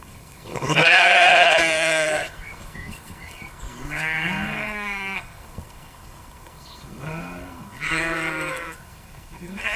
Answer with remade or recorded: remade